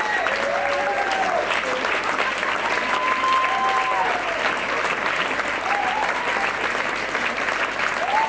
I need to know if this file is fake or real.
real